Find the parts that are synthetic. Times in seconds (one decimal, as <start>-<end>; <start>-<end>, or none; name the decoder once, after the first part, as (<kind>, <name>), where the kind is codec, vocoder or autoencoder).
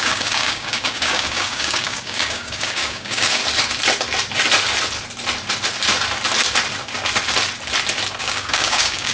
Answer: 0.0-3.4 (codec, DAC); 8.2-9.1